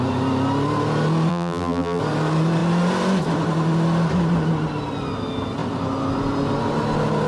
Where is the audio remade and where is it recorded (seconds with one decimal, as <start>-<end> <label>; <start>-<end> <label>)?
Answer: 0.0-1.3 recorded; 1.3-2.0 remade; 2.0-7.3 recorded